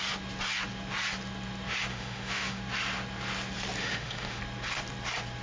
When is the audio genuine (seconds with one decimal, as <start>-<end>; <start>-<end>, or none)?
0.0-1.9; 2.6-3.8; 4.4-5.4